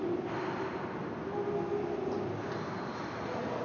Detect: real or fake real